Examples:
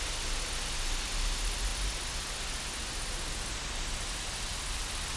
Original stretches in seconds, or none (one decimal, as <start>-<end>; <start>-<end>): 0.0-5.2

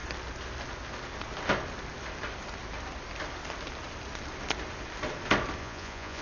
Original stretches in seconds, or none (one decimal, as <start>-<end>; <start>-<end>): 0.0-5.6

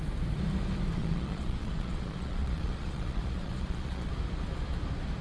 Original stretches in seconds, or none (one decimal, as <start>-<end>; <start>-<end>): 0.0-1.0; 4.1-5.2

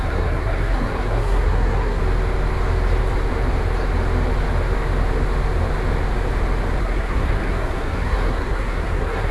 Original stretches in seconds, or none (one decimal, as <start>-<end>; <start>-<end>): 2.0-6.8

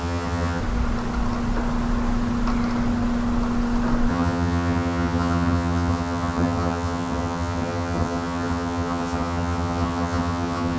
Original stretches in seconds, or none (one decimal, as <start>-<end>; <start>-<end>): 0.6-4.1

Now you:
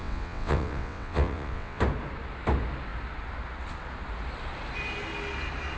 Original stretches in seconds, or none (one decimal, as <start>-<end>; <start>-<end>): 1.8-5.8